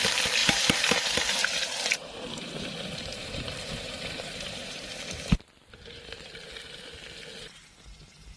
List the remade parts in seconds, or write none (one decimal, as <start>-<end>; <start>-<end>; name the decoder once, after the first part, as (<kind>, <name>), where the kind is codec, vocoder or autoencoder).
0.4-4.9 (vocoder, BigVGAN v2)

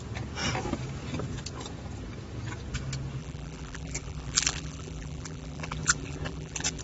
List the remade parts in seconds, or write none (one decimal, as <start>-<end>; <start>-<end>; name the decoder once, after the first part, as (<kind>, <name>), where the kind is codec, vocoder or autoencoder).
3.2-6.8 (vocoder, BigVGAN v2)

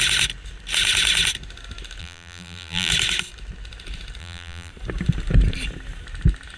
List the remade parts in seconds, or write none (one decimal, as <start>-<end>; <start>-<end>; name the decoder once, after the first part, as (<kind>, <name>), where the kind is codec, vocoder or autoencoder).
2.0-2.9 (vocoder, BigVGAN v2); 4.2-4.7

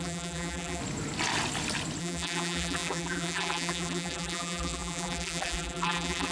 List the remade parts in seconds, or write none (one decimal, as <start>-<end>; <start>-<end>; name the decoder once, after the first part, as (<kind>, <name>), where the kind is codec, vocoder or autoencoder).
0.0-0.8 (vocoder, BigVGAN v2); 2.0-6.3